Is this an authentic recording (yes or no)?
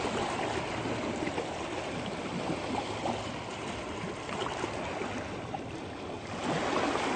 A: yes